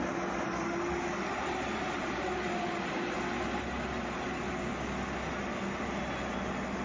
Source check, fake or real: real